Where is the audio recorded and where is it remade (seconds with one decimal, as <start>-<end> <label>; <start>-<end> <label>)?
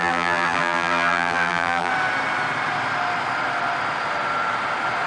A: 0.0-1.9 remade; 1.9-5.1 recorded